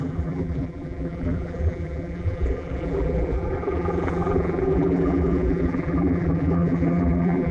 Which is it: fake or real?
fake